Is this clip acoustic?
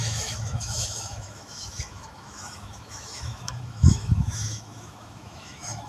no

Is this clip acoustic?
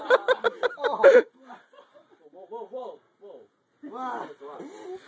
yes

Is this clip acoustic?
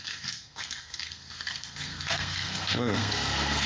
no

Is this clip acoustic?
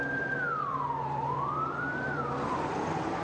no